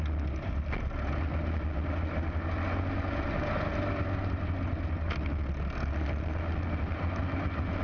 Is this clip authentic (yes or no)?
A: yes